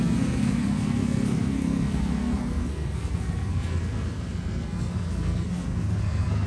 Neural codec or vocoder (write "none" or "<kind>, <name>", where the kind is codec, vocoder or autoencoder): codec, SNAC